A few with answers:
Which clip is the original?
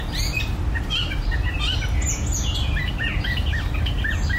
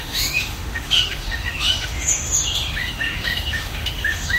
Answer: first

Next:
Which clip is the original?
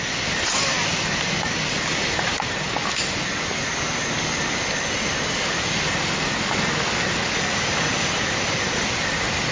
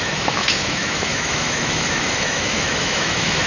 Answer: first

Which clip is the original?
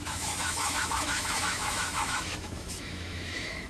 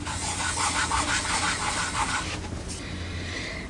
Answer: second